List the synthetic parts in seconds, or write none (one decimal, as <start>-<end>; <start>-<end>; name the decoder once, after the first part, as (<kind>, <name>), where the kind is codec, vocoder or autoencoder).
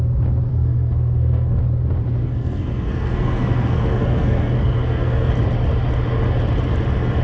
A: 0.5-1.6 (codec, SNAC); 2.2-5.3